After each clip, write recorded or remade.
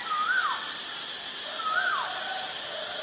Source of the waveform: recorded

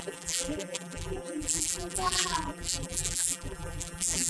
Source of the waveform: remade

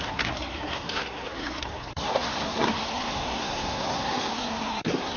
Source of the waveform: remade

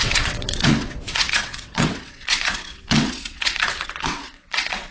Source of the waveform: remade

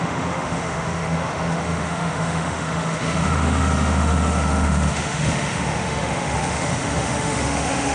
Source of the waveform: remade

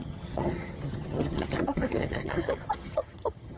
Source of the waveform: remade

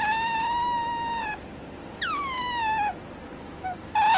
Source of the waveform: recorded